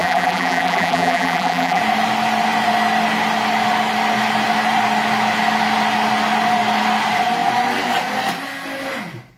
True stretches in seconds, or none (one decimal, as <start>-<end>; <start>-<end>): 1.8-9.4